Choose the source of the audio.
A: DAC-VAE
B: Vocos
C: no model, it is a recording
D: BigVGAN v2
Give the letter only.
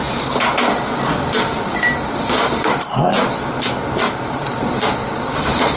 D